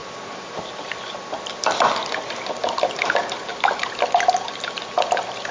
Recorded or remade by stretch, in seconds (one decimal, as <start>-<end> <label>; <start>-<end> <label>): 0.0-5.5 recorded